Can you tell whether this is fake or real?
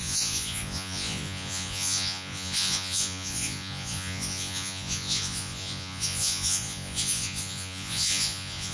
fake